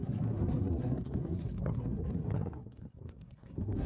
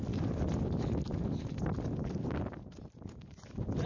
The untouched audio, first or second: second